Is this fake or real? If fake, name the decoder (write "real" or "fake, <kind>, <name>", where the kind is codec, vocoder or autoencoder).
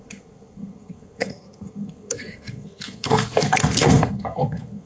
fake, codec, SNAC